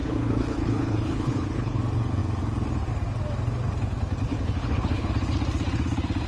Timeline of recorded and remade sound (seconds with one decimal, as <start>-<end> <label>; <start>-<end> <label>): 0.0-1.8 remade; 1.8-4.3 recorded; 4.3-5.1 remade; 5.1-6.3 recorded